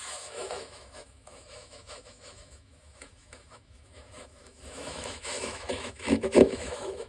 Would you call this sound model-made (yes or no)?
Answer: yes